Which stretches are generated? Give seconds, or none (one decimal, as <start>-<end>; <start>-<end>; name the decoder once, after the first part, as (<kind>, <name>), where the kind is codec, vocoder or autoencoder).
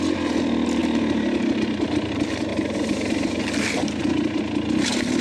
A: 2.5-3.4 (vocoder, BigVGAN v2)